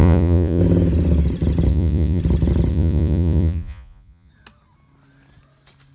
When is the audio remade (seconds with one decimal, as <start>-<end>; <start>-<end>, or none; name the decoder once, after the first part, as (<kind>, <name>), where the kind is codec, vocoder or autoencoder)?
0.0-0.6 (vocoder, Vocos); 1.7-2.2; 2.7-4.3